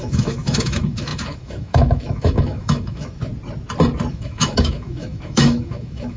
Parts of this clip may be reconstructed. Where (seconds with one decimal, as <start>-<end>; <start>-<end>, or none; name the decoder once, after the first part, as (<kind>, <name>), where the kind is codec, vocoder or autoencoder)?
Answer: 0.0-3.3 (autoencoder, DAC-VAE); 4.1-6.2